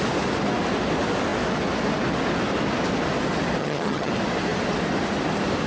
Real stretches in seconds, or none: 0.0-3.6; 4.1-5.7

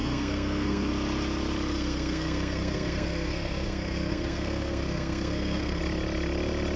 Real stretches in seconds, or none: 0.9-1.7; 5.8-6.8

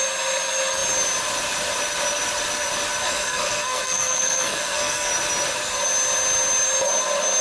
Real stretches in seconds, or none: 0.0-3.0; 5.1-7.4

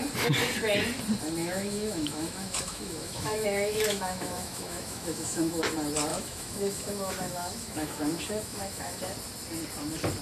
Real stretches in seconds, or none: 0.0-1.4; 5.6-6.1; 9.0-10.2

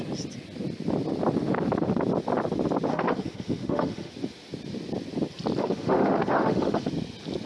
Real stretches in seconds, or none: 0.0-2.9; 4.1-5.6; 6.9-7.5